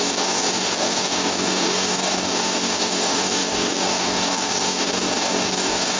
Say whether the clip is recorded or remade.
remade